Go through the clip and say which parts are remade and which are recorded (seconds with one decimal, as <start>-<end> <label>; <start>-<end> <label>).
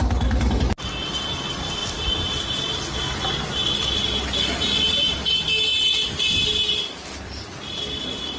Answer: 0.0-0.6 remade; 0.6-8.4 recorded